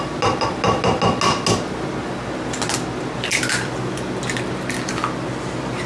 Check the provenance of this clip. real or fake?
real